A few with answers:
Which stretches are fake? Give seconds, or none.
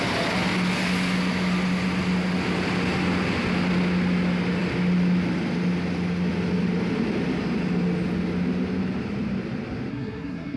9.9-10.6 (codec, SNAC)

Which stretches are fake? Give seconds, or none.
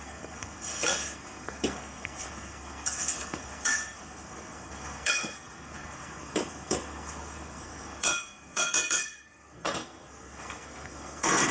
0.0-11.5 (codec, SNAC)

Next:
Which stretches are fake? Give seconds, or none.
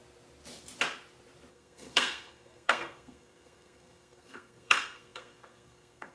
1.5-6.1 (codec, SNAC)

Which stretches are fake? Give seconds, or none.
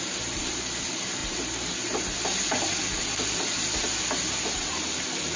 none